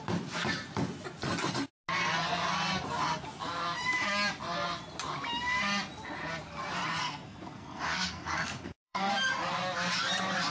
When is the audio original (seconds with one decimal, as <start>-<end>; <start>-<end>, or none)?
0.0-7.0; 9.1-10.5